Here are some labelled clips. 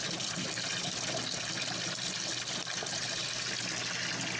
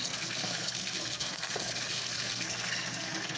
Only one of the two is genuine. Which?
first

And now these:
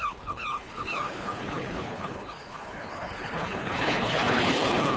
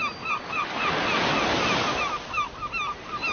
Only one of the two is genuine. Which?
second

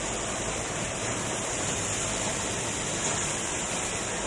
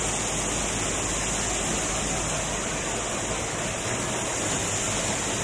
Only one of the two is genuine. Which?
second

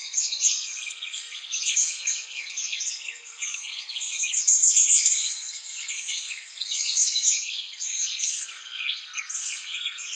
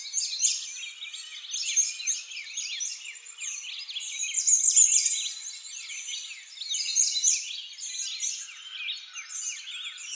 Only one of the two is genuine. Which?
second